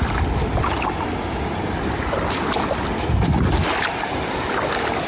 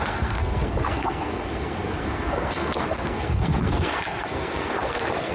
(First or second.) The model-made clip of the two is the second